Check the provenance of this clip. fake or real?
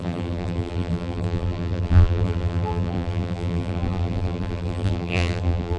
fake